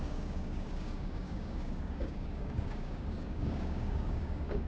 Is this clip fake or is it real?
fake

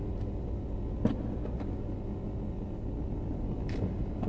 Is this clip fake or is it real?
real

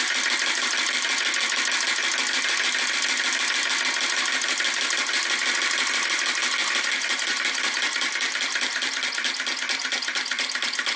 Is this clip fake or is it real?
real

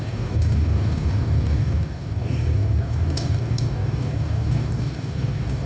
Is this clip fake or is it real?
fake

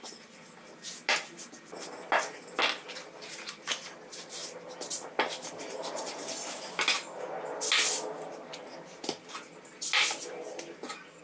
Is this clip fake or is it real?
real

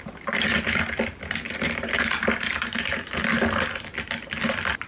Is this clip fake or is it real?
real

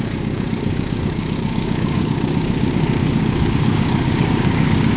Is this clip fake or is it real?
fake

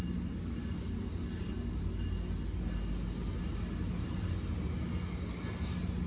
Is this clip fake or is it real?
real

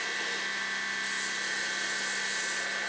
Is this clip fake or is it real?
real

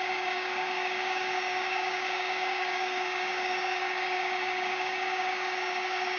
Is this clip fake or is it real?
fake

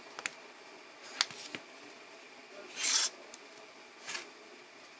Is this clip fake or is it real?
real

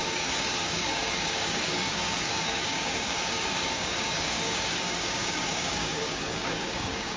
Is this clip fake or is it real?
fake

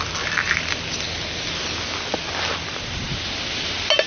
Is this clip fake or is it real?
real